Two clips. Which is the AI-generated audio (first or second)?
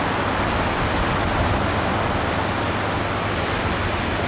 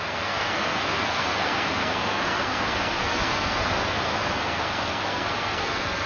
second